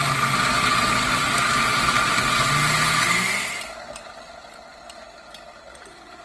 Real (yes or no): yes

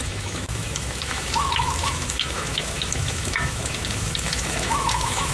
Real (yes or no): no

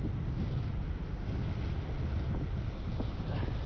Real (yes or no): yes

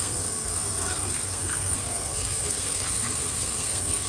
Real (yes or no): no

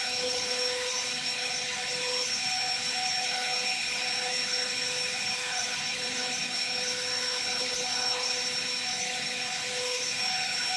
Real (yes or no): no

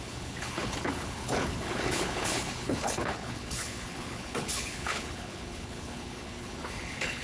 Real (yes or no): no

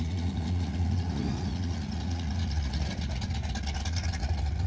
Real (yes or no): no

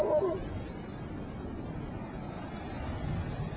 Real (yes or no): yes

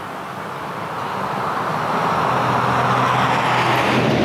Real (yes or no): yes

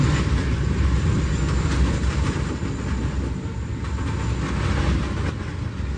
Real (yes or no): yes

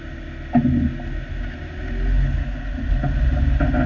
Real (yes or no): yes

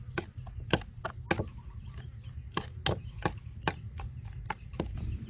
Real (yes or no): yes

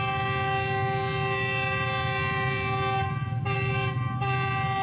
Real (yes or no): yes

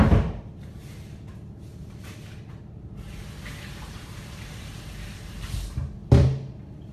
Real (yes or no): yes